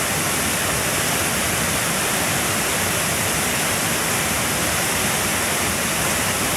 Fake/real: real